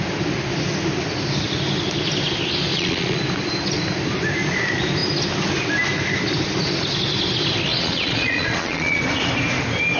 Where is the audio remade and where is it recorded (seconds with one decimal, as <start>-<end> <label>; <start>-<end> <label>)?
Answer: 0.0-2.7 recorded; 2.7-3.2 remade; 3.2-7.7 recorded; 7.7-9.0 remade; 9.0-10.0 recorded